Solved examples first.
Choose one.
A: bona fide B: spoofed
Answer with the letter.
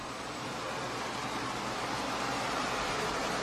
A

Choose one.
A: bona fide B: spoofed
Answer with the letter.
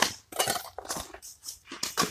A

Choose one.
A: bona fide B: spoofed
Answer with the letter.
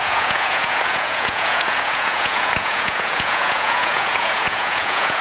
B